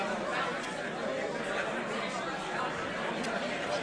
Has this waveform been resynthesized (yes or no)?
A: no